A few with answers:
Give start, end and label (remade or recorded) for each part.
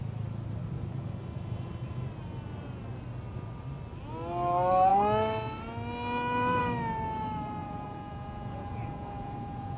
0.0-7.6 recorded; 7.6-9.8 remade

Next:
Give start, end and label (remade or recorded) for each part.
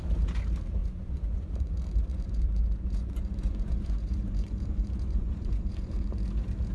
0.0-0.8 recorded; 0.8-1.7 remade; 1.7-2.1 recorded; 2.1-6.1 remade; 6.1-6.7 recorded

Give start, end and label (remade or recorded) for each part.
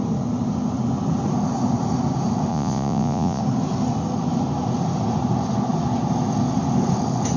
0.0-2.5 recorded; 2.5-3.4 remade; 3.4-7.4 recorded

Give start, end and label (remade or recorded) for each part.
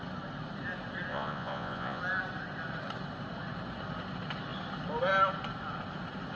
0.0-1.1 recorded; 1.1-2.0 remade; 2.0-6.4 recorded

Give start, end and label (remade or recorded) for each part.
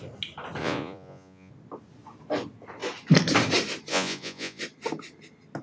0.0-0.6 recorded; 0.6-1.5 remade; 1.5-3.9 recorded; 3.9-4.6 remade; 4.6-5.6 recorded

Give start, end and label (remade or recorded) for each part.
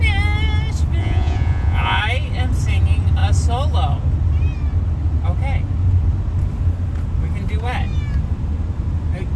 0.0-1.0 recorded; 1.0-2.0 remade; 2.0-9.4 recorded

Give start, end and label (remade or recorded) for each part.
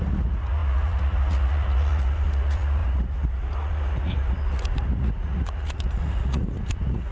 0.0-7.1 remade